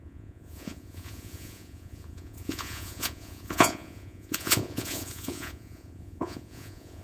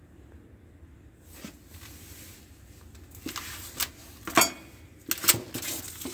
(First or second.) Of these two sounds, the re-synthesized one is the first